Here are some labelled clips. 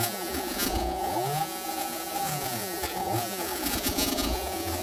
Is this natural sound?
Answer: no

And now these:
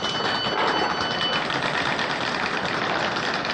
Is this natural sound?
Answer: yes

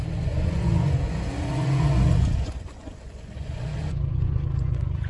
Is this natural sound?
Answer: no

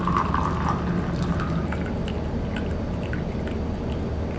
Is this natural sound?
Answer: yes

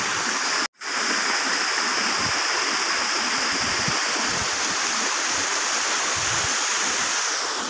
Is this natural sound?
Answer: yes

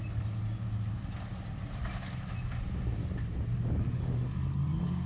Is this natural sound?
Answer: yes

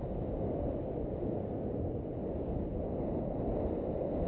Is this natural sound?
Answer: yes